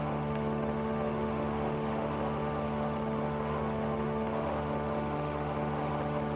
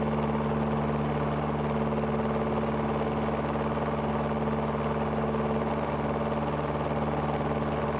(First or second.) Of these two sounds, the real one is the second